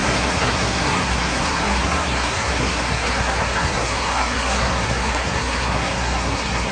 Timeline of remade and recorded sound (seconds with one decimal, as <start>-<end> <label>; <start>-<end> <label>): 0.0-6.7 remade